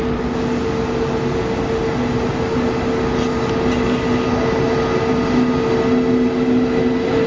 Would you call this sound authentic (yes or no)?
yes